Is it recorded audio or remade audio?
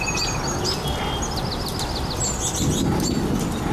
recorded